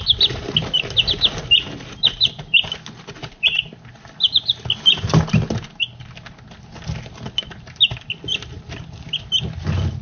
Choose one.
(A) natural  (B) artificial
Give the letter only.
A